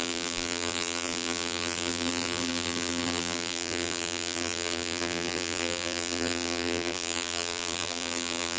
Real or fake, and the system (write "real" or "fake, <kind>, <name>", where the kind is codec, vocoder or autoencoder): fake, vocoder, BigVGAN v2